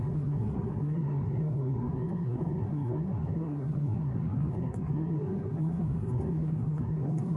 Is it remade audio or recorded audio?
remade